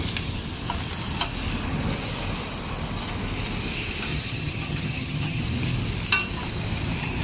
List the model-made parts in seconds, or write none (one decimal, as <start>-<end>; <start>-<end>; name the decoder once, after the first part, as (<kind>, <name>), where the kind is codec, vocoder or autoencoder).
4.1-5.4 (vocoder, HiFi-GAN)